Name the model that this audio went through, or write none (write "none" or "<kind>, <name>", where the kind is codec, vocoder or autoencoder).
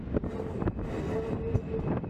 none